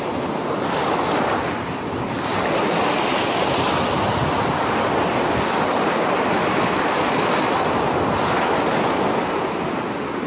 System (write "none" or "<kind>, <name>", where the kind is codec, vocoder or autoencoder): none